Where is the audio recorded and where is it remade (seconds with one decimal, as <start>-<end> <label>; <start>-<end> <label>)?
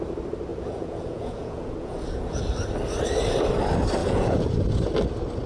0.0-0.5 recorded; 0.5-2.4 remade; 2.4-4.0 recorded; 4.0-4.5 remade; 4.5-5.5 recorded